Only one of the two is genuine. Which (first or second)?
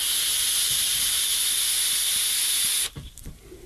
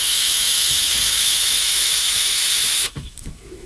first